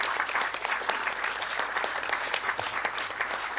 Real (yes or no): yes